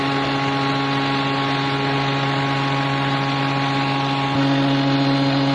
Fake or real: real